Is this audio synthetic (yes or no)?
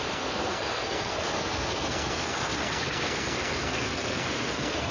yes